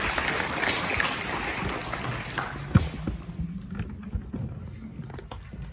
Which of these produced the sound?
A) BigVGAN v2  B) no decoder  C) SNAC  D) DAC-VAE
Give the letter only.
B